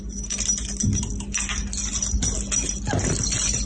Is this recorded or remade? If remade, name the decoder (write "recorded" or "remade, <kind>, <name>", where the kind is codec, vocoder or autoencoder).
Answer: recorded